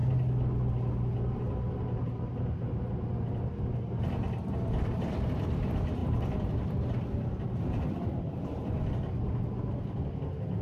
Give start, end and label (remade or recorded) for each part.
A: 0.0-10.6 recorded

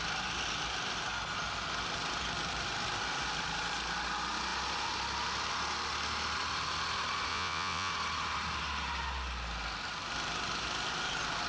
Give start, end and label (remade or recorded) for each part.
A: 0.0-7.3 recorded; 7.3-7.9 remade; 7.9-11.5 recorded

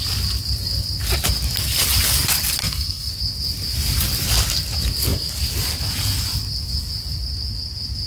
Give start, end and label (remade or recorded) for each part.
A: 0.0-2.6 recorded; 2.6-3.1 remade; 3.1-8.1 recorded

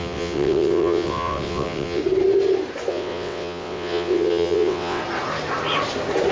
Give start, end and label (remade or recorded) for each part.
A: 0.0-2.0 remade; 2.0-2.9 recorded; 2.9-5.0 remade; 5.0-6.3 recorded

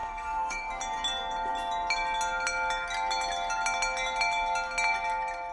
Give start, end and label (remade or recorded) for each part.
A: 0.0-0.7 remade; 0.7-5.5 recorded

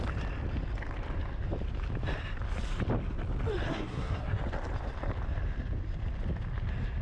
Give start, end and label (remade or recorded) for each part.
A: 0.0-3.7 recorded; 3.7-4.4 remade; 4.4-7.0 recorded

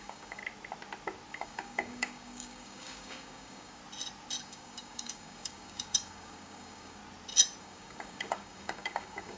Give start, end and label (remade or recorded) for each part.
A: 0.0-0.4 remade; 0.4-1.3 recorded; 1.3-3.8 remade; 3.8-4.4 recorded; 4.4-7.0 remade; 7.0-7.6 recorded; 7.6-9.4 remade